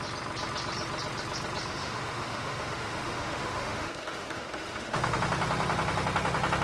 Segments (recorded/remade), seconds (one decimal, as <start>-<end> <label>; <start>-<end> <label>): 0.0-1.7 recorded; 1.7-5.2 remade; 5.2-6.6 recorded